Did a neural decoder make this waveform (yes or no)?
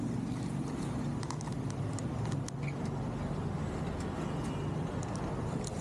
no